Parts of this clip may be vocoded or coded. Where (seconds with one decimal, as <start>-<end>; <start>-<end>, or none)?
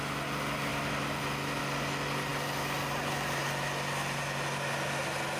none